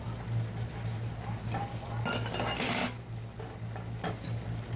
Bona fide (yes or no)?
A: yes